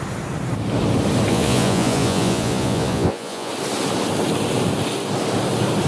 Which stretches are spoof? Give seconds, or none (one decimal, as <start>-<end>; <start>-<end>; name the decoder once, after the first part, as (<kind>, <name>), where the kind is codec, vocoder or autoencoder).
1.3-3.5 (vocoder, Vocos)